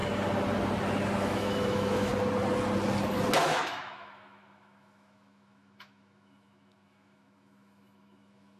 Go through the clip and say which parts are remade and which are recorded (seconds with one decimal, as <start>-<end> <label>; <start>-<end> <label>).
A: 0.0-1.2 recorded; 1.2-2.1 remade; 2.1-3.4 recorded; 3.4-8.6 remade